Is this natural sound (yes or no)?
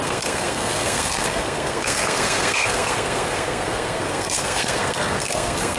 no